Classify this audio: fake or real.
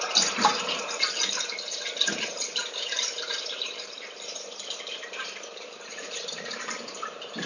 fake